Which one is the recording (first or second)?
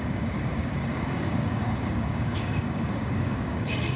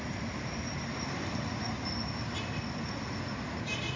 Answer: second